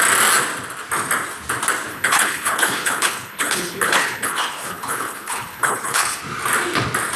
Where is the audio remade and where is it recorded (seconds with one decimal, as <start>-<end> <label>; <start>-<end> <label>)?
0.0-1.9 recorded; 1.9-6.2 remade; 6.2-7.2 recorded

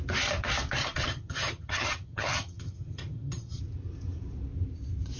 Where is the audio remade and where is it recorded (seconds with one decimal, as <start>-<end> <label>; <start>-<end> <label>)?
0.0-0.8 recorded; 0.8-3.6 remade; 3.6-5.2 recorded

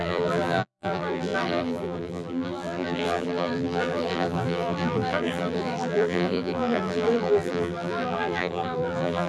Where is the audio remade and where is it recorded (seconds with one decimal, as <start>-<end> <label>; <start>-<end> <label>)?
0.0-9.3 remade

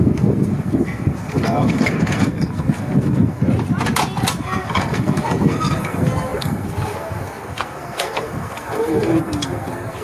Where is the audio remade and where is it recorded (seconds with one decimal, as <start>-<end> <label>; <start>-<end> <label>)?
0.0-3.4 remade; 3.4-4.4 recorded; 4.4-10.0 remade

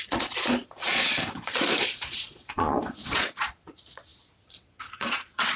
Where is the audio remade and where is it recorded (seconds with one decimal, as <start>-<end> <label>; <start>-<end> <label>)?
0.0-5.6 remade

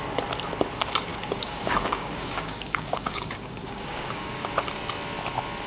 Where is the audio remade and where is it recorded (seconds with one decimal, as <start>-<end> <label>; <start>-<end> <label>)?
0.0-1.1 recorded; 1.1-4.5 remade; 4.5-5.7 recorded

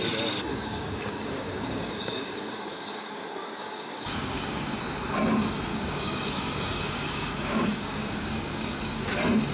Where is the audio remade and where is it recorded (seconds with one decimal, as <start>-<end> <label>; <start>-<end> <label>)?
0.0-0.5 recorded; 0.5-4.8 remade; 4.8-5.7 recorded; 5.7-9.1 remade; 9.1-9.5 recorded

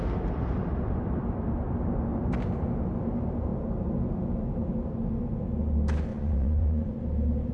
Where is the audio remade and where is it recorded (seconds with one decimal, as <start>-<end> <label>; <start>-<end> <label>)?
0.0-6.1 recorded; 6.1-7.0 remade; 7.0-7.5 recorded